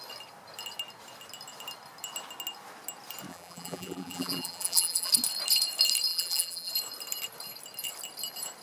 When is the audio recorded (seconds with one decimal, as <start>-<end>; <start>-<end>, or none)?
0.0-3.3; 5.1-6.1; 6.7-8.6